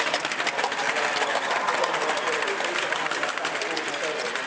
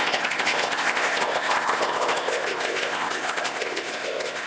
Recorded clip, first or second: first